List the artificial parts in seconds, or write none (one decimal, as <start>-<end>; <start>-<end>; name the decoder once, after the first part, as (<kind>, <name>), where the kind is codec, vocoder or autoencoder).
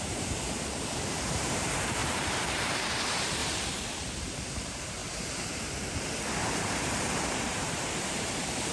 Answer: 0.0-3.4 (vocoder, BigVGAN v2); 4.4-5.0; 6.5-8.7